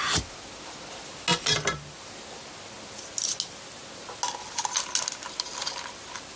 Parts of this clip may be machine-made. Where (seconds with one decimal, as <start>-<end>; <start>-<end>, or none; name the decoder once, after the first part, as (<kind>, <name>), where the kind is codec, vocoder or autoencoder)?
none